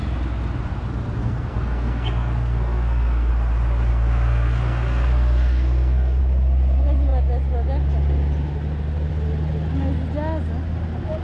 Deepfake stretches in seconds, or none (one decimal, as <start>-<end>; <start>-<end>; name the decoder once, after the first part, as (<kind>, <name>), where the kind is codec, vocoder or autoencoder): 1.2-3.3 (codec, SNAC); 3.9-6.2